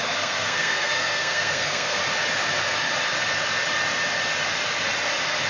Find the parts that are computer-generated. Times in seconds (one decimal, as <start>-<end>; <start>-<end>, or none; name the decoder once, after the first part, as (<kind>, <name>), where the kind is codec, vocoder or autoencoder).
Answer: 0.0-2.0 (codec, SNAC)